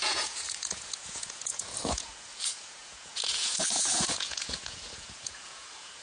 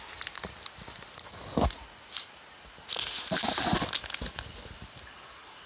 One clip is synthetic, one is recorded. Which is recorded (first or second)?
second